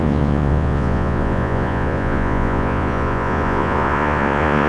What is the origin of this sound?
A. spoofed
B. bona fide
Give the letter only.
A